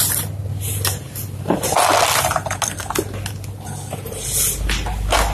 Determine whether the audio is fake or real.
real